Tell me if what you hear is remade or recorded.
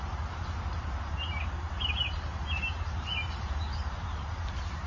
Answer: remade